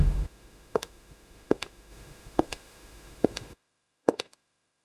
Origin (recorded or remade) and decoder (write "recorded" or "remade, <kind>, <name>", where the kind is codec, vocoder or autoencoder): remade, autoencoder, DAC-VAE